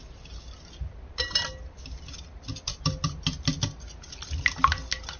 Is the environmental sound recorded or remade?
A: recorded